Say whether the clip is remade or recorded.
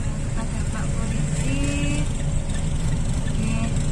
recorded